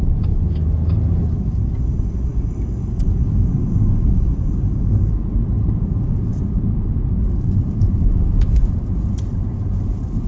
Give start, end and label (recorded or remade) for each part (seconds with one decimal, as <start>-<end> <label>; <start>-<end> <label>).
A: 0.0-6.3 recorded; 6.3-10.3 remade